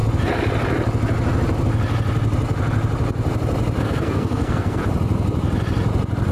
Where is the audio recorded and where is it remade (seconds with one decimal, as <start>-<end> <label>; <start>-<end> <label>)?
0.0-3.8 recorded; 3.8-4.8 remade; 4.8-6.3 recorded